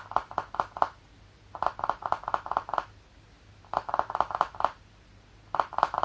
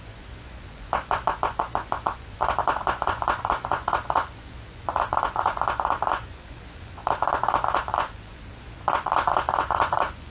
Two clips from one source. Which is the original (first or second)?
first